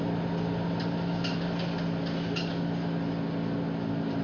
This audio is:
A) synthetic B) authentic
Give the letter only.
B